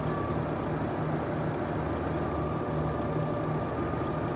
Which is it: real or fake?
real